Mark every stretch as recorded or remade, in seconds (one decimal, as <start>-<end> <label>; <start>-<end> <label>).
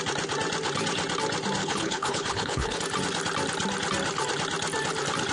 0.0-1.6 recorded; 1.6-2.8 remade; 2.8-5.3 recorded